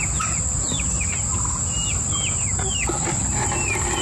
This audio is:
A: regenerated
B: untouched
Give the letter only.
B